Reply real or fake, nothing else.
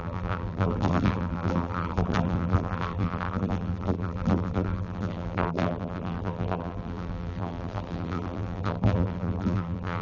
fake